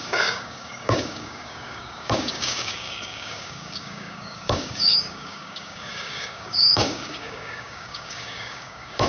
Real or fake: fake